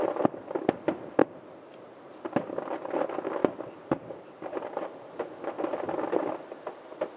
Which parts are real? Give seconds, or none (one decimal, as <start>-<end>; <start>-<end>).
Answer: 0.0-1.2; 2.1-3.4; 5.1-7.2